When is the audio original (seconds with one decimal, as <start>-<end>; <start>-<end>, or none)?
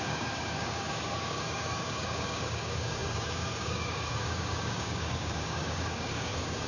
none